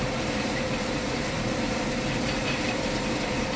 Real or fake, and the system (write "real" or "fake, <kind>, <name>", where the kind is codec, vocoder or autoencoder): fake, vocoder, BigVGAN v2